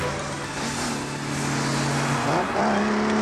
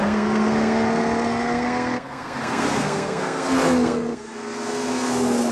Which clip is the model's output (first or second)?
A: second